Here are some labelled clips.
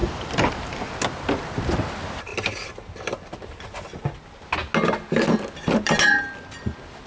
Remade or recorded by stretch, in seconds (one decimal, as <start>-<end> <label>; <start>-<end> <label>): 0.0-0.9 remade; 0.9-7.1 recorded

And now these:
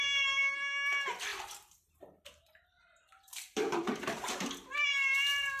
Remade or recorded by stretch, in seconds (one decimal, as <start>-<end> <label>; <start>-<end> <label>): 0.0-1.3 recorded; 1.3-4.5 remade; 4.5-5.6 recorded

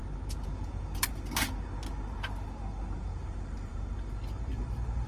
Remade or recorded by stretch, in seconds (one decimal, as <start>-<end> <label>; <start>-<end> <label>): 0.0-3.1 recorded; 3.1-3.7 remade; 3.7-4.5 recorded; 4.5-5.1 remade

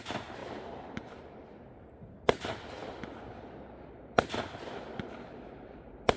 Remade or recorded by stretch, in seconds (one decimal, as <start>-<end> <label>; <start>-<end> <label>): 0.0-0.4 recorded; 0.4-1.6 remade; 1.6-6.2 recorded